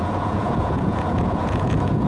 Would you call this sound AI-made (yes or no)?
yes